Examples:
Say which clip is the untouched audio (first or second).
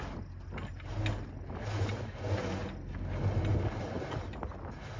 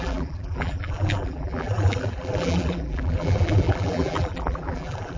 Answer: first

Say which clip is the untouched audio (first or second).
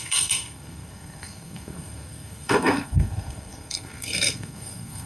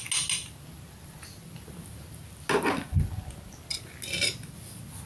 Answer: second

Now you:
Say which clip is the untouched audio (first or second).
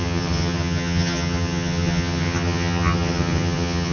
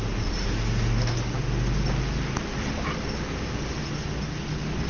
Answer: second